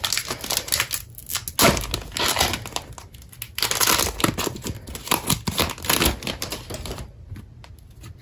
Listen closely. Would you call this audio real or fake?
real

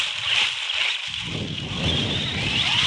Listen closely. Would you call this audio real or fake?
real